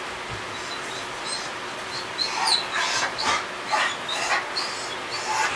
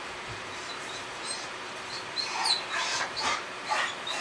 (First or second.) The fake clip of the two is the second